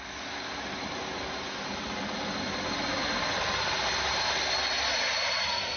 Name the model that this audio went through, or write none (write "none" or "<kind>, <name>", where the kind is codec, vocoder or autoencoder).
none